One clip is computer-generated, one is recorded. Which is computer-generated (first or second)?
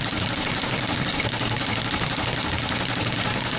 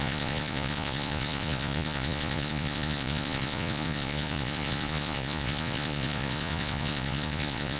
second